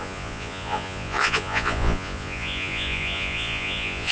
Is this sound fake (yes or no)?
yes